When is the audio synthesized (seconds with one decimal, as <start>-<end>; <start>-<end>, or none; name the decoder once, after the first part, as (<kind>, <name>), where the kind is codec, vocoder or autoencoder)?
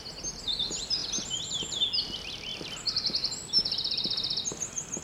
none